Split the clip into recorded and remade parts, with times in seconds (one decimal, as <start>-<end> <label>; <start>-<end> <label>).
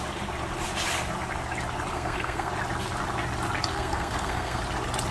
0.0-1.9 recorded; 1.9-2.5 remade; 2.5-3.7 recorded; 3.7-4.6 remade; 4.6-5.1 recorded